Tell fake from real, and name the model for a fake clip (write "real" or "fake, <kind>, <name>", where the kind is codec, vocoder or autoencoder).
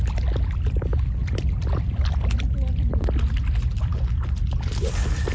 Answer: real